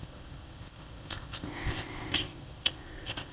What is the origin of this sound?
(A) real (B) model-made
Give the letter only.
B